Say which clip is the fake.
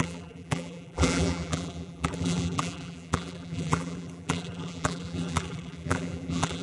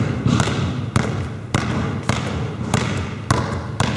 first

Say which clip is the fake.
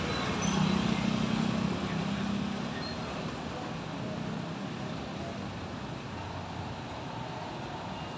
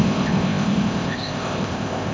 second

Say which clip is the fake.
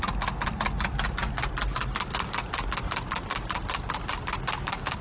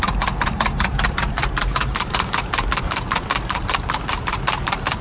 second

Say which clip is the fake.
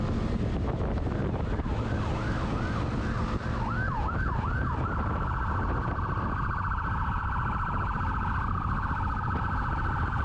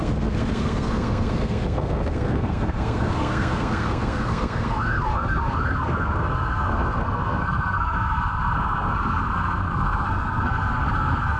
second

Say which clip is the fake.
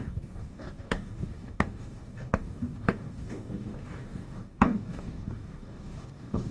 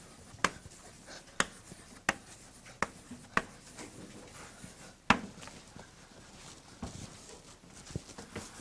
first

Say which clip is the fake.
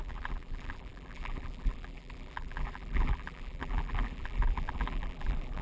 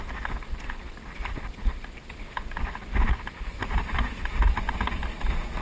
first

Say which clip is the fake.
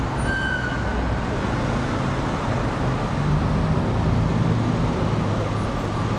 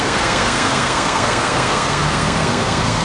second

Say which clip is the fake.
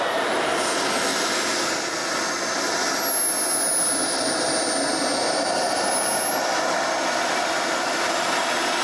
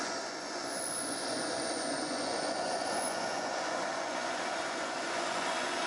second